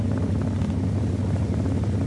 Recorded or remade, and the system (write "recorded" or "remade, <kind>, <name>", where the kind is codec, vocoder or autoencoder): recorded